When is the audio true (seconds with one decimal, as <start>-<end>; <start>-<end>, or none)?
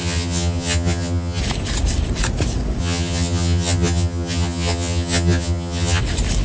1.4-2.8; 6.0-6.4